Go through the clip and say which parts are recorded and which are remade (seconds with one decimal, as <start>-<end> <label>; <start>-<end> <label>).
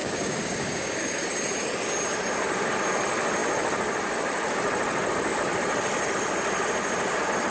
0.0-1.3 remade; 1.3-7.5 recorded